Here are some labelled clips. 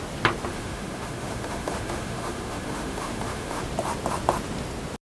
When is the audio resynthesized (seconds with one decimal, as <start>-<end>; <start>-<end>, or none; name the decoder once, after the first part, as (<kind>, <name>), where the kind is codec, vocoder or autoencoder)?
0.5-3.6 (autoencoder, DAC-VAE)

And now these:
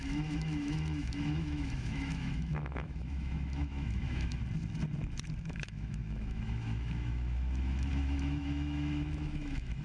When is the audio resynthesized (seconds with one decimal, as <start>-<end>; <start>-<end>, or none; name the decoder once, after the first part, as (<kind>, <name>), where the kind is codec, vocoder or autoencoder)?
0.0-4.4 (autoencoder, DAC-VAE); 5.4-9.8

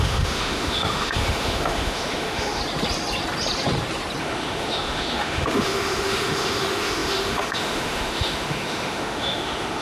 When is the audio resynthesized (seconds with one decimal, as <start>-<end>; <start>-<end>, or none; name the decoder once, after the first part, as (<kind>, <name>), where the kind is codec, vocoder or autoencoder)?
0.0-2.6 (autoencoder, DAC-VAE); 4.2-9.8